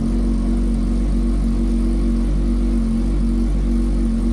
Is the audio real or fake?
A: real